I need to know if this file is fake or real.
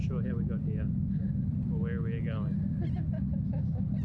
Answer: real